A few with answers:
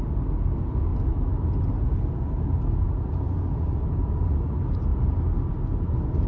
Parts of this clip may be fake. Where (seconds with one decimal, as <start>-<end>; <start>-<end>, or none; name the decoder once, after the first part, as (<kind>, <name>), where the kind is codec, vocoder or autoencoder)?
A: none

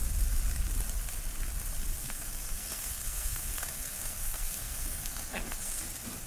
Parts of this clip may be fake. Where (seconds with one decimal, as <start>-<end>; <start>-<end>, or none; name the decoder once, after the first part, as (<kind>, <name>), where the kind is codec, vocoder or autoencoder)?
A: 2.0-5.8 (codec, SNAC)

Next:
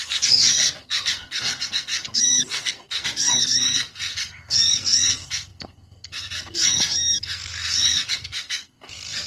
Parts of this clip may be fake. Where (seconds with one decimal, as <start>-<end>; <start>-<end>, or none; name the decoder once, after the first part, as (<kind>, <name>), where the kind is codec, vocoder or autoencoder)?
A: 0.0-9.3 (codec, SNAC)

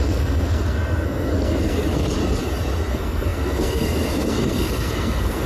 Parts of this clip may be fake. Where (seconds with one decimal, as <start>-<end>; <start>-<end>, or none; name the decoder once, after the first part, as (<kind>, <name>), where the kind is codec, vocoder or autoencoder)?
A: 0.0-2.2 (codec, SNAC); 2.9-5.5

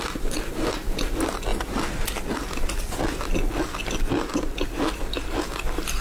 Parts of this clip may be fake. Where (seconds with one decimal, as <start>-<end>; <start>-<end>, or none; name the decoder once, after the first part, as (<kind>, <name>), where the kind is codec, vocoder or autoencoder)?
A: none